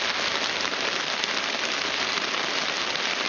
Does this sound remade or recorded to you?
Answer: recorded